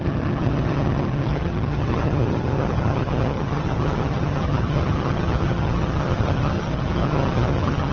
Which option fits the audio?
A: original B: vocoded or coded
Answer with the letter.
B